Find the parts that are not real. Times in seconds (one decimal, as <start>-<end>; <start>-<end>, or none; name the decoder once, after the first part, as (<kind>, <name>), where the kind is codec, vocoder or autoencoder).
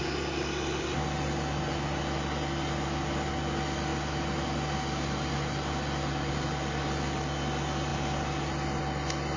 none